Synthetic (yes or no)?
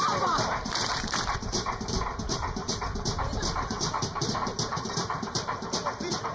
yes